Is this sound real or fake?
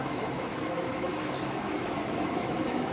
fake